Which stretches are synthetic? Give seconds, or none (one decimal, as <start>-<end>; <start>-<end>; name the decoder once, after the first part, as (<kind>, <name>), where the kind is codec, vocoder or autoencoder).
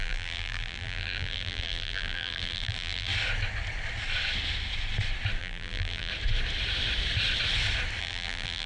0.0-3.1 (vocoder, BigVGAN v2); 5.4-6.1; 8.0-8.7